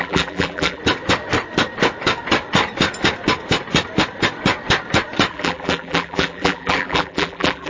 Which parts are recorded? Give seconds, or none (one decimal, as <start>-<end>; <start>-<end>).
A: 0.8-5.3